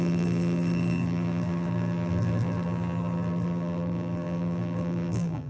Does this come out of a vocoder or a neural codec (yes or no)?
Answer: yes